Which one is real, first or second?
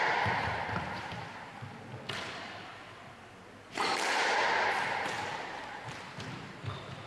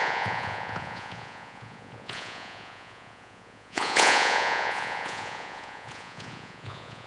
first